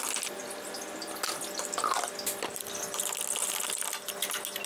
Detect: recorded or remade recorded